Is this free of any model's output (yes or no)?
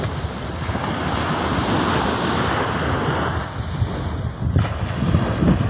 yes